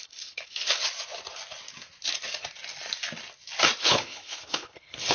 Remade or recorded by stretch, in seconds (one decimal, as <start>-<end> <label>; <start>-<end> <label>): 0.0-0.8 remade; 0.8-3.8 recorded; 3.8-5.1 remade